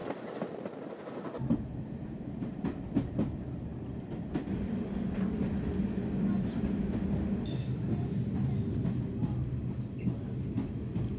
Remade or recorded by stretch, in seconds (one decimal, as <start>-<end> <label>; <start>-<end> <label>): 0.0-11.2 recorded

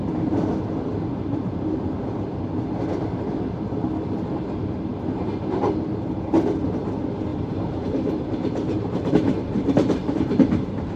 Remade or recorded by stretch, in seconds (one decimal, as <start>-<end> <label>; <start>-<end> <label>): 0.0-7.3 recorded; 7.3-11.0 remade